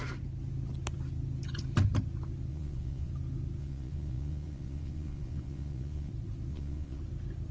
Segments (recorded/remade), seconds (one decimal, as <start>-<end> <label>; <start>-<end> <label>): 0.0-2.5 recorded; 2.5-3.1 remade; 3.1-3.6 recorded; 3.6-6.1 remade; 6.1-6.5 recorded; 6.5-7.0 remade; 7.0-7.5 recorded